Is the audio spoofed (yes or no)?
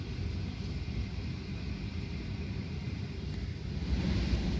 no